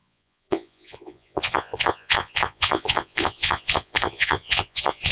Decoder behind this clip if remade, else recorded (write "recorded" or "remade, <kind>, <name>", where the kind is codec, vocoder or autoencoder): remade, vocoder, Vocos